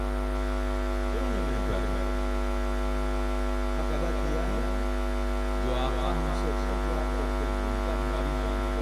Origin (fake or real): real